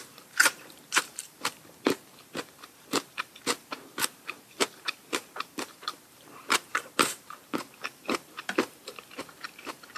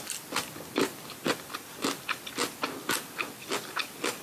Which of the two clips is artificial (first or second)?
first